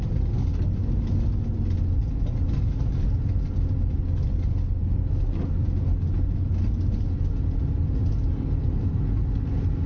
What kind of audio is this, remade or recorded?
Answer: recorded